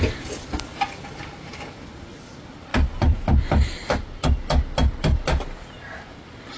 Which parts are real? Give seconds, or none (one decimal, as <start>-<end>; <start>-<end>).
0.0-2.7; 3.9-6.6